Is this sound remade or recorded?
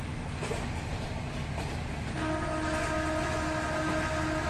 recorded